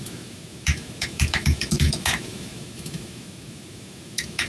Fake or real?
fake